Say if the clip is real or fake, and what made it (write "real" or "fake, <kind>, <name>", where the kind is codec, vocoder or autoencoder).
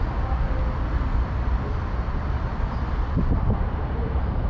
real